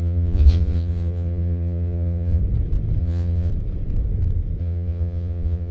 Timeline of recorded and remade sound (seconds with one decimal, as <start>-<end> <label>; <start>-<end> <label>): 0.0-2.4 remade; 2.4-3.0 recorded; 3.0-3.5 remade; 3.5-4.6 recorded; 4.6-5.7 remade